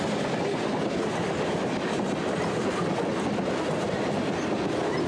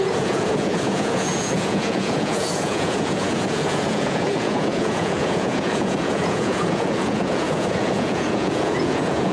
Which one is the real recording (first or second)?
first